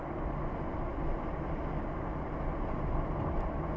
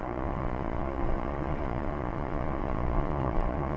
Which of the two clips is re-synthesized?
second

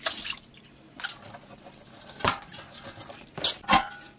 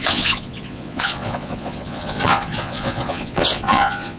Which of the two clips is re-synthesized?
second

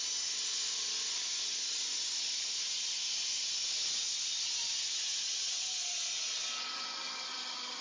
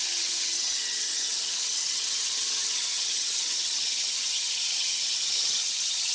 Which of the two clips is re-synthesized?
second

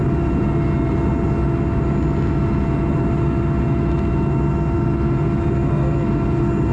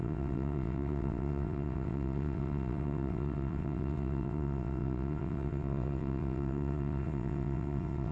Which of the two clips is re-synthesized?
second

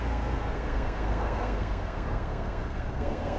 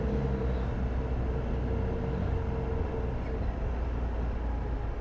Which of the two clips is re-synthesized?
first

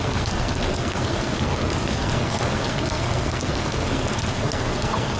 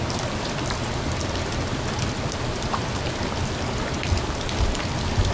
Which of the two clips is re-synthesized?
first